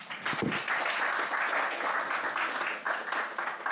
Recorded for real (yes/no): yes